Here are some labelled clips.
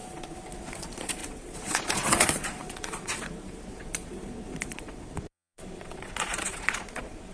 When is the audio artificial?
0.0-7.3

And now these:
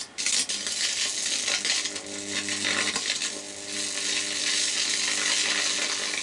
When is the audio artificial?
none

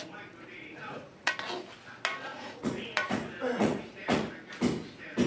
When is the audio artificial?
0.5-1.3; 2.3-4.3